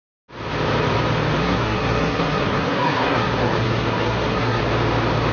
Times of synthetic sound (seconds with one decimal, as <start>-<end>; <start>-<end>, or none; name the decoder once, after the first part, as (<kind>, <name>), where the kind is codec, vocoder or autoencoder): 1.4-4.6 (codec, SNAC)